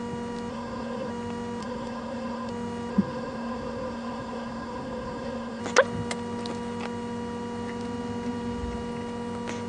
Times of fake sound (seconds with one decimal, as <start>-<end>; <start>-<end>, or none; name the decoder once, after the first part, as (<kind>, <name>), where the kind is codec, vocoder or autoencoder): 0.5-1.1 (codec, SNAC); 1.6-2.5; 2.9-5.6

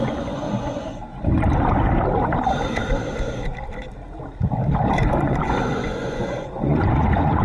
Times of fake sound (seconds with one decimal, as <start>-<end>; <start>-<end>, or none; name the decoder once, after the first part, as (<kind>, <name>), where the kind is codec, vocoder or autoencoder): 0.0-1.1 (vocoder, Vocos); 4.8-7.4

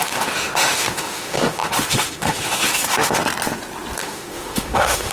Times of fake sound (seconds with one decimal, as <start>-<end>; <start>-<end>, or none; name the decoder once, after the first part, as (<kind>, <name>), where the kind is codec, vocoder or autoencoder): 0.0-3.2 (autoencoder, DAC-VAE); 4.0-5.1